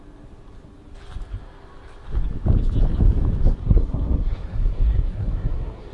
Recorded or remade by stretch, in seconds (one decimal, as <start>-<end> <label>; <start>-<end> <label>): 0.0-3.6 recorded; 3.6-5.9 remade